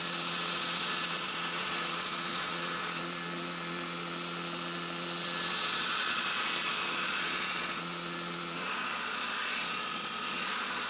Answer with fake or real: fake